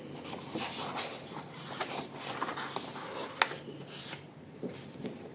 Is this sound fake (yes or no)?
no